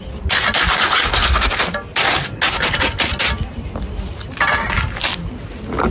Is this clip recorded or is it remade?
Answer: recorded